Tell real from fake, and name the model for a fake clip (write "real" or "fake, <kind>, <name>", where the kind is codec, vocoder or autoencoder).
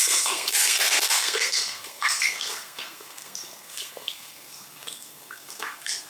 fake, codec, SNAC